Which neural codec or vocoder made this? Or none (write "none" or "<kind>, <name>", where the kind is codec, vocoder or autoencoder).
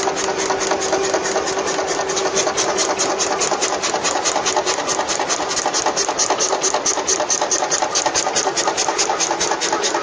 none